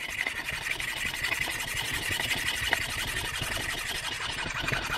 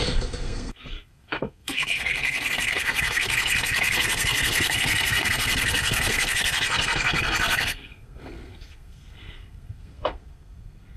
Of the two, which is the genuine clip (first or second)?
first